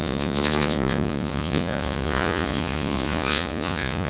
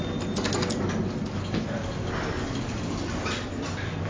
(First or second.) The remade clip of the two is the first